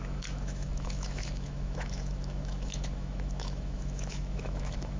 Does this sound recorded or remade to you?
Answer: remade